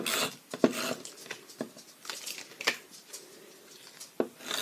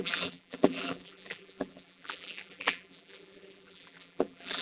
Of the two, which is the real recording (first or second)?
first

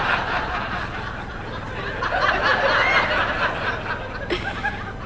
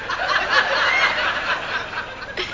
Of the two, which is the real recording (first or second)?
first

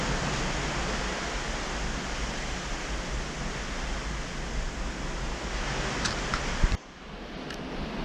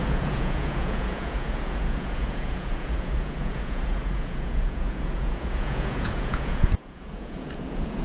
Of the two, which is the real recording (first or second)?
first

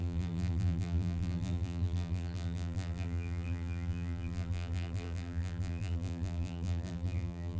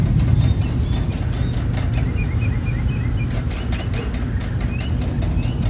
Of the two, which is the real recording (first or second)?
second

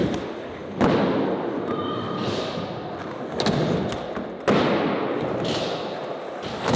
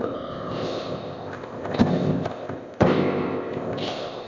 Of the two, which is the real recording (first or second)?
first